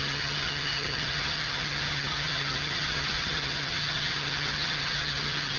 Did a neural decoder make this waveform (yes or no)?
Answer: yes